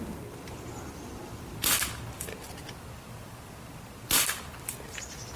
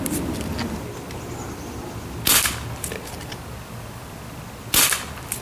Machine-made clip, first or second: first